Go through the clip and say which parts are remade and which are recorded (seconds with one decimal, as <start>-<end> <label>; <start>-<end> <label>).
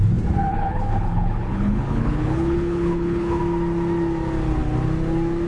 0.0-0.5 recorded; 0.5-3.4 remade; 3.4-5.5 recorded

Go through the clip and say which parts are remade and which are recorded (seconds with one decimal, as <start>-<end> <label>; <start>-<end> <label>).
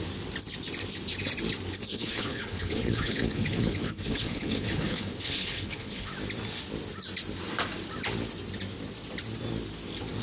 0.0-1.9 recorded; 1.9-6.1 remade; 6.1-10.2 recorded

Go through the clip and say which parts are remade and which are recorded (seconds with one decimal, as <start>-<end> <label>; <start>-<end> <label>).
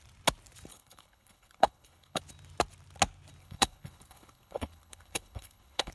0.0-0.7 recorded; 0.7-2.2 remade; 2.2-3.4 recorded; 3.4-5.9 remade